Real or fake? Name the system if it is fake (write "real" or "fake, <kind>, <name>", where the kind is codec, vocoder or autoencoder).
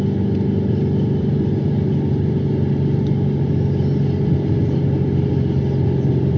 real